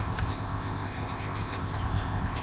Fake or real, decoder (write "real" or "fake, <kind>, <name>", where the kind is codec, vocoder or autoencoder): fake, codec, ZipCodec